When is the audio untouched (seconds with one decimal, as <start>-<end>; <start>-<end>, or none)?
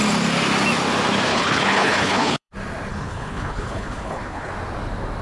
0.0-1.3; 2.5-2.9; 4.5-5.2